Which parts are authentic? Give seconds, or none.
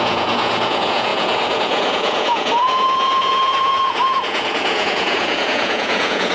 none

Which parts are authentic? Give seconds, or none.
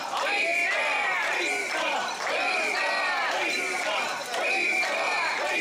0.0-5.6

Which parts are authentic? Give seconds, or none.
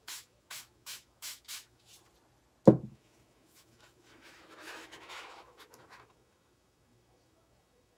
1.9-2.9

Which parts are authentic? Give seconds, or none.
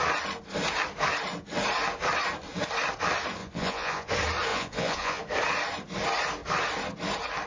0.0-3.4; 4.1-4.5; 5.2-7.5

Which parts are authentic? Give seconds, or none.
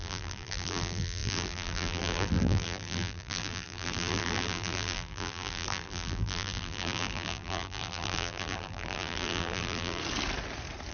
10.0-10.9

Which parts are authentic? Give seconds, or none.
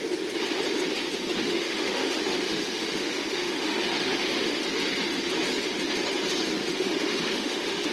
0.0-1.4; 4.6-6.6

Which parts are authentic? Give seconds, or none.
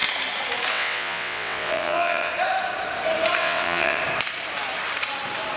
0.0-0.7; 2.3-3.4; 4.0-5.6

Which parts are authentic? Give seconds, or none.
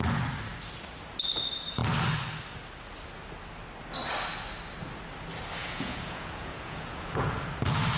0.0-5.6; 7.5-8.0